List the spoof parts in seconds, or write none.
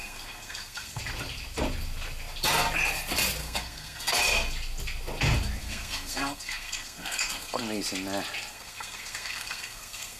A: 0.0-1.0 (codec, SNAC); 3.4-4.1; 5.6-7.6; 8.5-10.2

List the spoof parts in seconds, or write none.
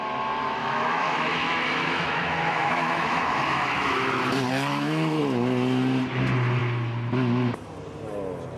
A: 0.6-4.2 (autoencoder, DAC-VAE); 4.7-5.2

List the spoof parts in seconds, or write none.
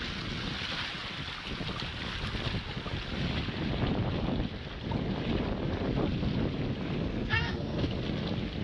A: 7.1-7.9 (codec, SNAC)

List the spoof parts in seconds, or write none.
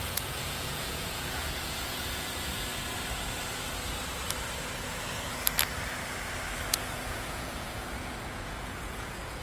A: 0.0-2.7 (vocoder, Vocos); 6.7-9.4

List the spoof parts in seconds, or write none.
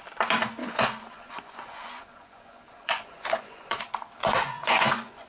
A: 0.6-3.8 (vocoder, Vocos); 4.2-5.3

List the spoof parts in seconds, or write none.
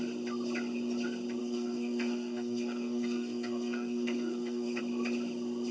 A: 1.4-4.8 (codec, SNAC)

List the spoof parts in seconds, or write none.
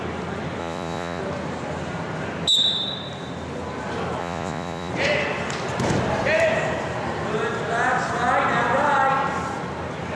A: 0.6-1.2 (vocoder, Vocos); 4.2-4.9